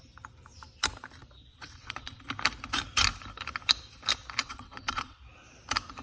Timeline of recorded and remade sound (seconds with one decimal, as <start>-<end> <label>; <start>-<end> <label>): 0.0-1.5 recorded; 1.5-2.2 remade; 2.2-4.4 recorded; 4.4-5.2 remade; 5.2-6.0 recorded